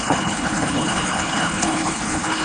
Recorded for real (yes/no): no